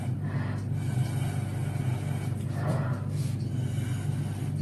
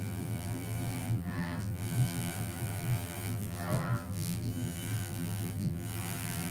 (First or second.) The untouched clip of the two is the first